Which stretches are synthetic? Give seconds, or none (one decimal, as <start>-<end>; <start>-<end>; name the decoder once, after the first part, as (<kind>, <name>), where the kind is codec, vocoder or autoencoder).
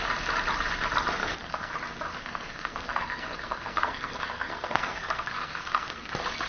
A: 1.2-1.7 (codec, SNAC); 2.2-6.1